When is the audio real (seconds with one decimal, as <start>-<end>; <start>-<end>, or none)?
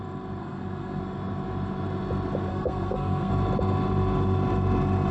0.0-0.4; 1.0-2.5; 3.3-5.1